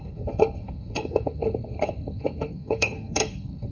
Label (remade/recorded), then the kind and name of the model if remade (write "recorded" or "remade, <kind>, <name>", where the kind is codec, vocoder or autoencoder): remade, codec, SNAC